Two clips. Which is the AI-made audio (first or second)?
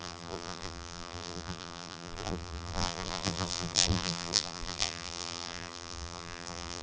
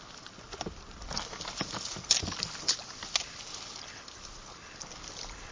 first